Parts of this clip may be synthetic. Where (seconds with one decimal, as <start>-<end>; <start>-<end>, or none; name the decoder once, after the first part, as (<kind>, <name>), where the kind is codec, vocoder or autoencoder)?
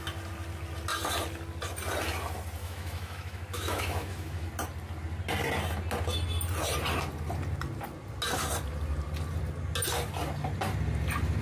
2.6-4.5 (autoencoder, DAC-VAE)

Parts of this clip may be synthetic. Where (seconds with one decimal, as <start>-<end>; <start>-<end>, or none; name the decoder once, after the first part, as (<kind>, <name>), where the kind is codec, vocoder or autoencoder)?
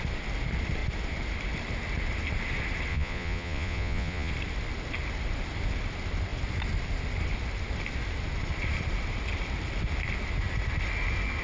2.9-4.3 (vocoder, Vocos)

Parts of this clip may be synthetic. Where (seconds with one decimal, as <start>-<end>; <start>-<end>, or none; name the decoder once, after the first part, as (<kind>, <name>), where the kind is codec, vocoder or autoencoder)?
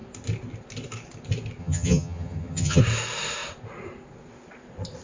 1.6-2.8 (vocoder, HiFi-GAN)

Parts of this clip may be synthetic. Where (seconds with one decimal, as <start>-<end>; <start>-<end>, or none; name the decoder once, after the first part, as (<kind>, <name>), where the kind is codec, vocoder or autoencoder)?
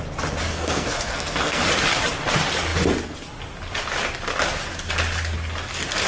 0.5-1.6 (codec, SNAC)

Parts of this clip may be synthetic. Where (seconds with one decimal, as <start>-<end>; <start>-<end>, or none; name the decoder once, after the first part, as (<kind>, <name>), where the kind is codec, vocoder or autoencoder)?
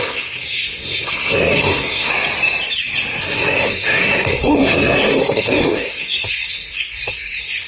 0.0-2.1 (codec, SNAC); 3.2-7.7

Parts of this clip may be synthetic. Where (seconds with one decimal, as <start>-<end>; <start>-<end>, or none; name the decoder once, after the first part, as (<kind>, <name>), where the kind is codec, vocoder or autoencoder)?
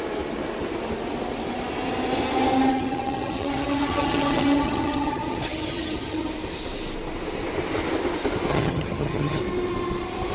2.7-6.3 (vocoder, HiFi-GAN); 8.5-9.4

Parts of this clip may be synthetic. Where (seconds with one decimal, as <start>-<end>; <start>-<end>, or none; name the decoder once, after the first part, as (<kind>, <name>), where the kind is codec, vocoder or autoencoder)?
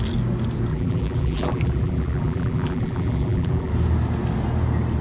0.7-3.7 (vocoder, BigVGAN v2)